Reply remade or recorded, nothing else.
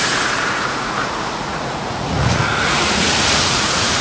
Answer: remade